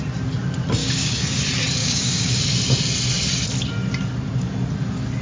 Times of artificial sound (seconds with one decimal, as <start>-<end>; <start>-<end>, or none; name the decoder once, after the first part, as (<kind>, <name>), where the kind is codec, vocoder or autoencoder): 0.8-1.4 (codec, DAC); 1.8-2.4